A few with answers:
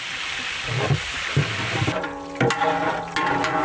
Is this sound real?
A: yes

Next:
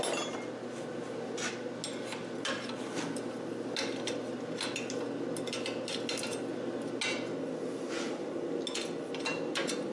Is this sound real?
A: yes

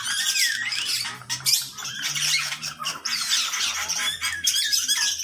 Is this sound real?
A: no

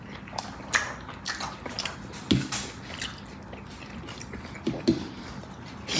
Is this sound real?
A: yes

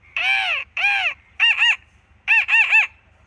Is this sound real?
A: yes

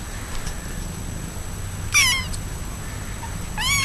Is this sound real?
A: yes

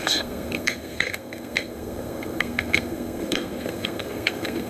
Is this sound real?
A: no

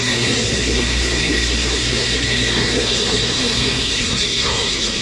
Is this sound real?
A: no